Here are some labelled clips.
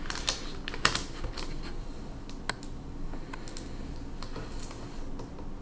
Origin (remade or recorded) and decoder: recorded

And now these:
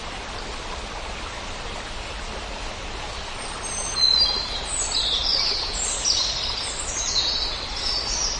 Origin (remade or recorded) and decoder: recorded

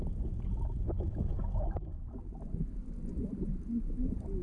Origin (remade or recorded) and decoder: recorded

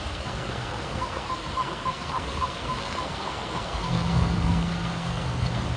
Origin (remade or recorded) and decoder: remade, codec, SNAC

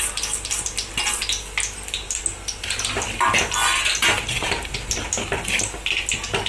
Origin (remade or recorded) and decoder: recorded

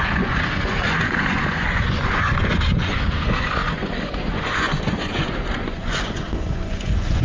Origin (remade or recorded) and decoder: remade, vocoder, Vocos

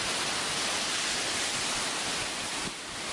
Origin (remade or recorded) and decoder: recorded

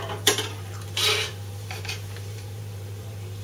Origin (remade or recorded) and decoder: remade, vocoder, BigVGAN v2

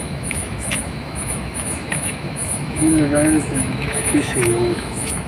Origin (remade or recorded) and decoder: remade, autoencoder, DAC-VAE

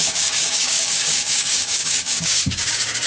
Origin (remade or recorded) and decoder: remade, codec, DAC